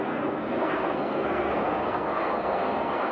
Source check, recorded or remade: remade